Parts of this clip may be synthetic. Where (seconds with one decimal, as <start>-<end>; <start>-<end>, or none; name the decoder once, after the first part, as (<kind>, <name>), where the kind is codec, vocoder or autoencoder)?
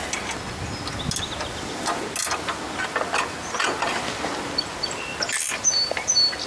none